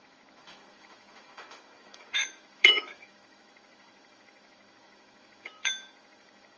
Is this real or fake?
fake